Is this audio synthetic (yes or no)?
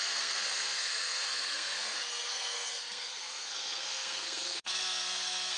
yes